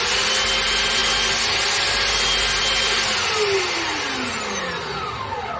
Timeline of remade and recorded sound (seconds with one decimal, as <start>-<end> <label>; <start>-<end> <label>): 0.0-5.6 recorded